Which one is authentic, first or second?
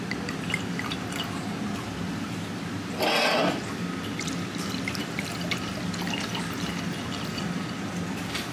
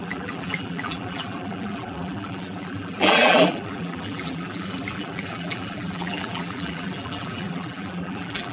first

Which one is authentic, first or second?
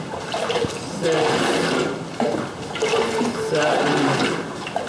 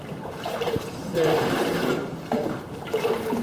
first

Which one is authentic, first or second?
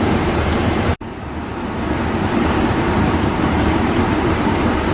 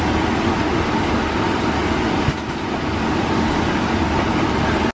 second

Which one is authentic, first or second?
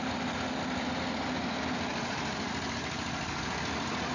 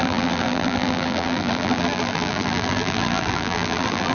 first